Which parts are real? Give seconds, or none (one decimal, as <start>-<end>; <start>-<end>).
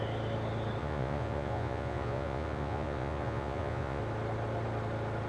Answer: 0.0-0.8; 4.0-5.3